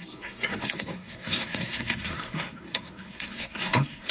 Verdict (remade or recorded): remade